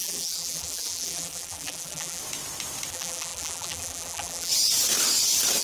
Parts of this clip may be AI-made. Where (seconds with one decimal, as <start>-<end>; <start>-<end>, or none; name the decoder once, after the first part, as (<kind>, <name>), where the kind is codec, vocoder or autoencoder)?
0.0-2.2 (vocoder, BigVGAN v2); 2.9-4.5

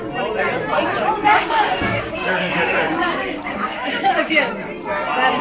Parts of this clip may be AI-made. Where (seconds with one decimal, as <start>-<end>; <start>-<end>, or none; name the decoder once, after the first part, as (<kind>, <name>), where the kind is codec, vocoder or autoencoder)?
1.3-4.5 (codec, DAC)

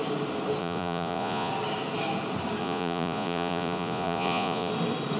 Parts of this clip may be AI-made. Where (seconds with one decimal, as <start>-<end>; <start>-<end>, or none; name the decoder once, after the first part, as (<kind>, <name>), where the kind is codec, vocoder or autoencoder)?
0.6-1.5 (vocoder, Vocos); 2.6-4.7

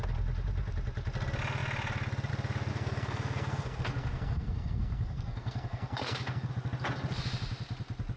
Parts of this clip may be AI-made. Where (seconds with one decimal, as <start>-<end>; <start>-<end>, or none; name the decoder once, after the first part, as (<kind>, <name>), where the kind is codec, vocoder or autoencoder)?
2.7-6.5 (codec, SNAC)

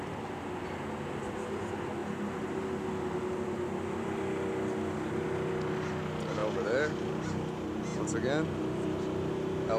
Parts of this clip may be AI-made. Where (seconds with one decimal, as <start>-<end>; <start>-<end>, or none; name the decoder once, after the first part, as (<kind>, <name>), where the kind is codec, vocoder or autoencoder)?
none